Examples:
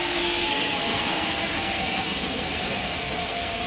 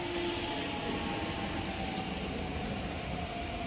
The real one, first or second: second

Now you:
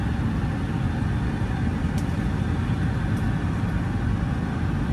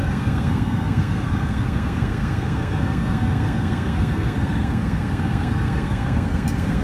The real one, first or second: first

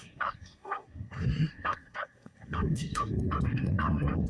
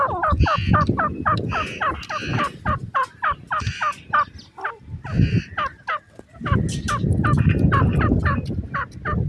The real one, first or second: second